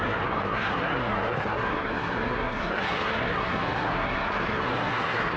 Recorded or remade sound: remade